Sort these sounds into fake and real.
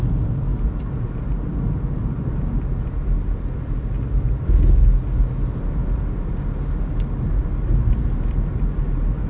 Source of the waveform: real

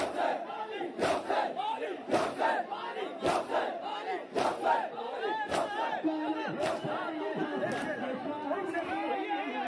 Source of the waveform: real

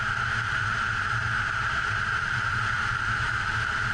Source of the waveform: real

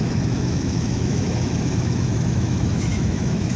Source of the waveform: fake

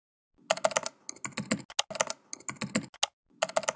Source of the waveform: real